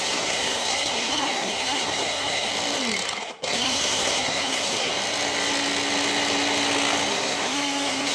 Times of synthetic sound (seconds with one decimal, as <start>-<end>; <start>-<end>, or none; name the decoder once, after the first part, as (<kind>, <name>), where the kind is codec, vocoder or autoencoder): 0.0-2.5 (codec, SNAC); 3.2-4.9; 7.1-8.1